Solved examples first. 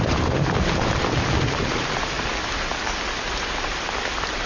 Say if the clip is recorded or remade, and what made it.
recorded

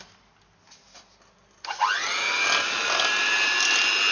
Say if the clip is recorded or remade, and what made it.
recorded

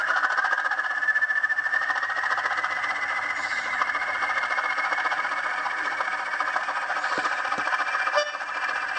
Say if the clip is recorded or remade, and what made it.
recorded